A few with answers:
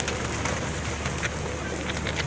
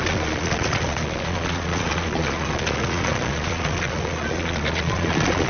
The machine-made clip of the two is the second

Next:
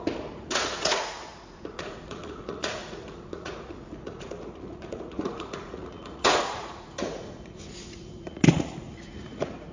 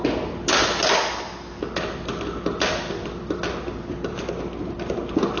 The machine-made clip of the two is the first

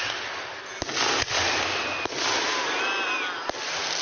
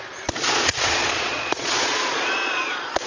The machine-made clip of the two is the second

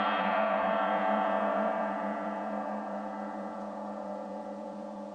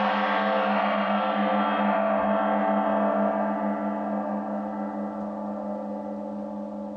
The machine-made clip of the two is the first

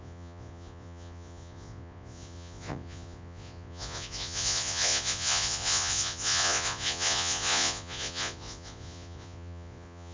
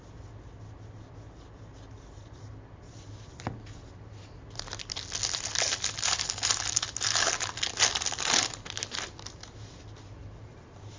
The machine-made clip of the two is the first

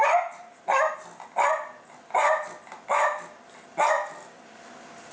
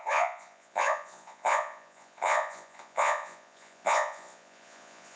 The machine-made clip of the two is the second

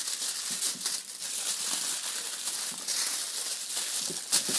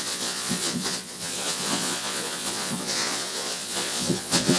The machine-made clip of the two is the second